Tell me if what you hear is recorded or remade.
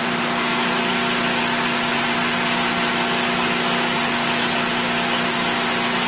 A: recorded